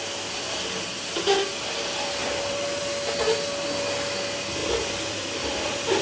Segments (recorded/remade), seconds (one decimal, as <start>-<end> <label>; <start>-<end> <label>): 0.0-2.2 recorded; 2.2-2.8 remade; 2.8-4.6 recorded; 4.6-5.6 remade; 5.6-6.0 recorded